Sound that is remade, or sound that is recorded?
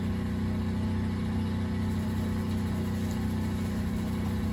recorded